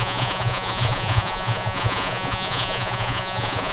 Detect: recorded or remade remade